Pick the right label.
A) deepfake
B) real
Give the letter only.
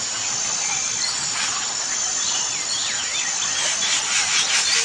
B